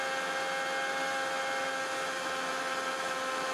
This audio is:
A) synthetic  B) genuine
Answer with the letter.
B